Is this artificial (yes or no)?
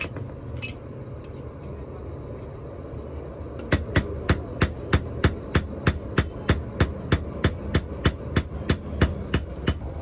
no